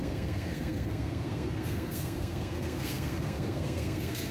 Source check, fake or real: fake